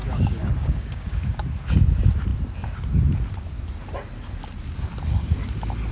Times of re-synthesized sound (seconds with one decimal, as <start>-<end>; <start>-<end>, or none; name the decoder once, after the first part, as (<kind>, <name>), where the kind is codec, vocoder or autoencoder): 0.0-1.4 (codec, DAC)